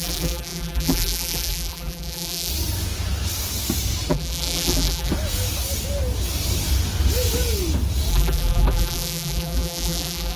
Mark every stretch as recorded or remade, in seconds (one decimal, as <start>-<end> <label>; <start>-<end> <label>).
0.0-2.5 remade; 2.5-4.1 recorded; 4.1-5.1 remade; 5.1-8.1 recorded; 8.1-10.4 remade